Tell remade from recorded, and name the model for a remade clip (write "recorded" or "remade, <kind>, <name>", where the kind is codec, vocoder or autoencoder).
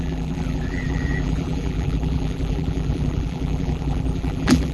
remade, vocoder, BigVGAN v2